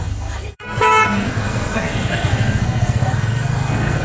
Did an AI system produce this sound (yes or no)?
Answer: yes